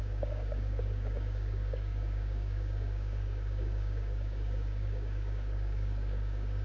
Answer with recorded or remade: remade